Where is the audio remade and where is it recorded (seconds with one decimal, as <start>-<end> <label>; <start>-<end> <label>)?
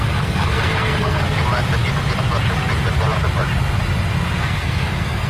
0.0-1.2 remade; 1.2-4.4 recorded; 4.4-5.3 remade